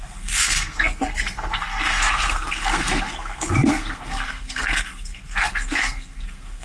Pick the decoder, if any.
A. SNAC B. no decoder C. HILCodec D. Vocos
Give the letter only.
A